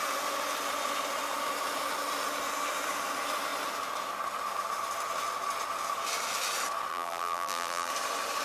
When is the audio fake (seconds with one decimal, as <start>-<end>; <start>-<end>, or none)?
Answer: 6.9-7.9